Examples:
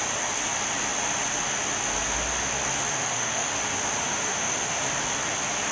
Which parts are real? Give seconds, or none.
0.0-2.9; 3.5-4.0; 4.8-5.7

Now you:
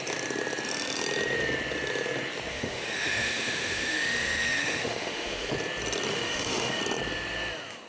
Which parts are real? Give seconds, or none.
0.0-2.5; 5.5-6.1; 6.8-7.9